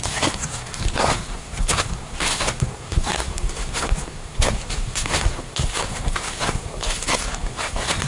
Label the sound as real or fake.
fake